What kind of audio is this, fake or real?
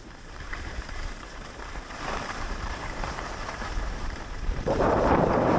fake